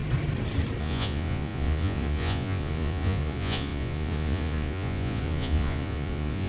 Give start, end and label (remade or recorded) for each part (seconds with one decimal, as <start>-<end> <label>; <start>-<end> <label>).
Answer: 0.0-0.8 recorded; 0.8-6.5 remade